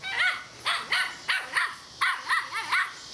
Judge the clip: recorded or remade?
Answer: recorded